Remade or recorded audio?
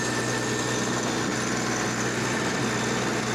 recorded